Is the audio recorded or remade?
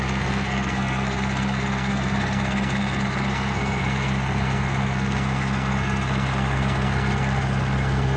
remade